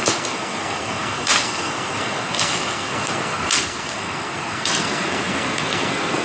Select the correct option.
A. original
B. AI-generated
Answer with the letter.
B